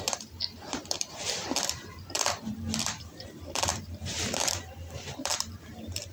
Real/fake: fake